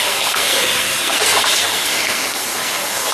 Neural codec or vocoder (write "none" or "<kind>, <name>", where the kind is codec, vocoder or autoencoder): codec, SNAC